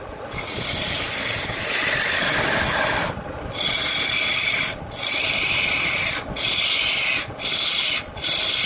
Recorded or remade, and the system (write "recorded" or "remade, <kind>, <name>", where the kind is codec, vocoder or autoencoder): recorded